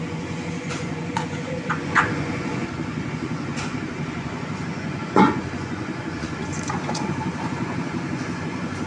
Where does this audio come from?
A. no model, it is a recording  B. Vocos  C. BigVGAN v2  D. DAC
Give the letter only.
B